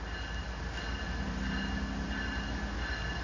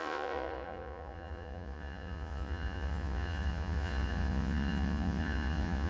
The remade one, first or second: second